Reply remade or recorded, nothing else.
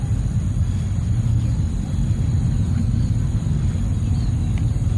recorded